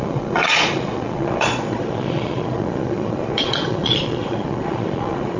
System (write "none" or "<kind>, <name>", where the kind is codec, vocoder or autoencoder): vocoder, Vocos